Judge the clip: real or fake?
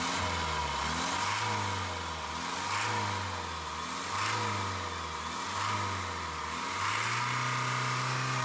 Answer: real